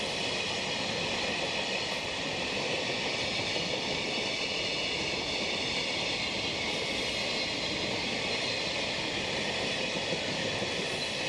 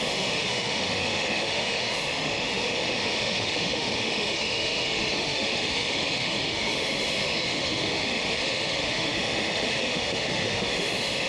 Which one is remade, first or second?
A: second